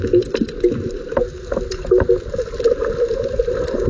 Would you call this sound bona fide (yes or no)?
yes